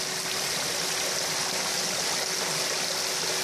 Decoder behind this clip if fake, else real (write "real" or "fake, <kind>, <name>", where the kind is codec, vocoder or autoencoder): real